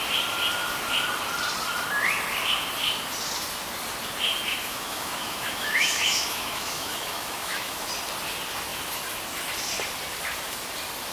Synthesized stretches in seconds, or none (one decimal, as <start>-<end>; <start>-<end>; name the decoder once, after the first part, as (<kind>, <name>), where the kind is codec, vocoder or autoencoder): 4.6-7.9 (autoencoder, DAC-VAE)